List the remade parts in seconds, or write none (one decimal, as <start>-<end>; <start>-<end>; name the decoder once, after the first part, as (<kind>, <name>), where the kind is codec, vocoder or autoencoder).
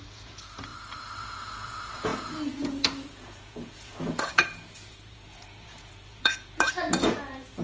0.0-0.7 (vocoder, Vocos); 1.2-7.6